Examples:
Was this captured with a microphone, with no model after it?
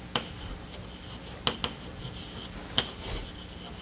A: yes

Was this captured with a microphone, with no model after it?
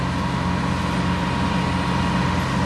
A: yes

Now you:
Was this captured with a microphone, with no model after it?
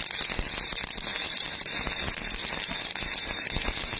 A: yes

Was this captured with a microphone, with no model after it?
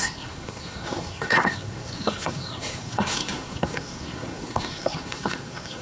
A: no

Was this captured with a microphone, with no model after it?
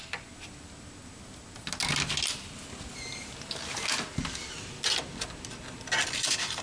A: yes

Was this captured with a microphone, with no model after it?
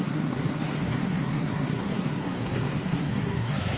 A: no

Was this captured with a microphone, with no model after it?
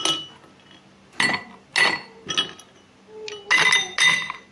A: yes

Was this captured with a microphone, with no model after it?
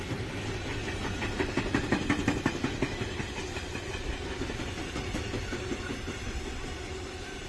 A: yes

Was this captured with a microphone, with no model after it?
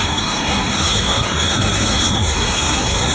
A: no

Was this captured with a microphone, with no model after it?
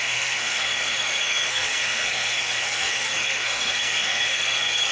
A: no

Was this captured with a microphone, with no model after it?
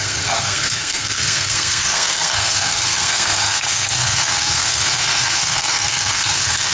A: no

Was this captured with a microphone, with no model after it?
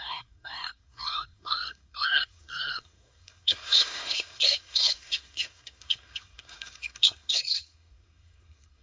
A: no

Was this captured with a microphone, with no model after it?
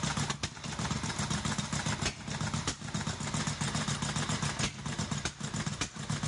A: yes